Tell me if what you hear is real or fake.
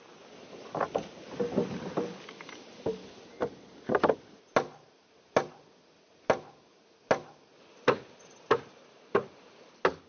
real